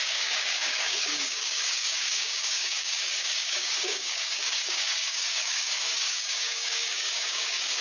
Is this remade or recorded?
remade